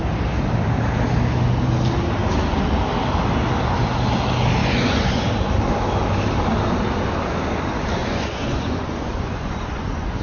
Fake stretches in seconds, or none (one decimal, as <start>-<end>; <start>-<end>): 4.6-5.3; 8.0-10.2